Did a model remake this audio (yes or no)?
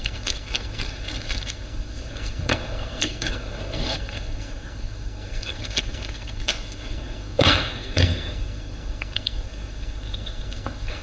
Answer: yes